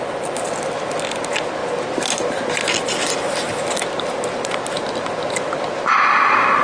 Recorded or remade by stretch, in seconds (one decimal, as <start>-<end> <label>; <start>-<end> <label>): 0.0-6.6 recorded